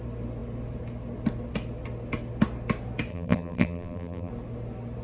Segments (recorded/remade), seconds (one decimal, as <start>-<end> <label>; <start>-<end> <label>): 0.0-3.1 recorded; 3.1-4.3 remade; 4.3-5.0 recorded

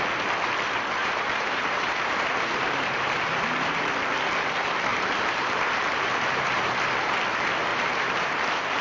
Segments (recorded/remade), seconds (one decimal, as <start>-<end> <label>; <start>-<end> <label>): 0.0-1.0 recorded; 1.0-3.8 remade; 3.8-4.9 recorded; 4.9-6.8 remade; 6.8-7.7 recorded; 7.7-8.8 remade

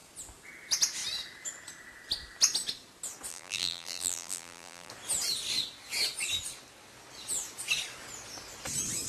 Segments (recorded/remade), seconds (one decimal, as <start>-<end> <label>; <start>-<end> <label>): 0.0-3.3 recorded; 3.3-4.9 remade; 4.9-9.1 recorded

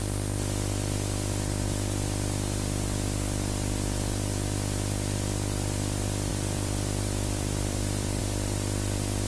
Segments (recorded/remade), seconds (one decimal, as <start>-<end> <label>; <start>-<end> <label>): 0.0-6.3 recorded; 6.3-8.2 remade; 8.2-9.3 recorded

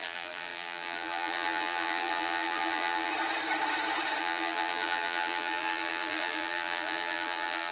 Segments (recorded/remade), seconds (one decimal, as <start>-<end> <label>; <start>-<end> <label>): 0.0-3.1 remade; 3.1-4.2 recorded; 4.2-7.7 remade